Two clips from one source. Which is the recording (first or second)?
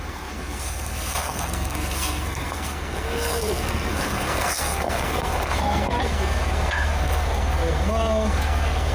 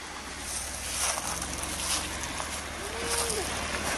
second